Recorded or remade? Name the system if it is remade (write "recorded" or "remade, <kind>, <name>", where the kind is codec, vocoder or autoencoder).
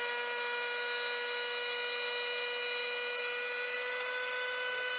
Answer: recorded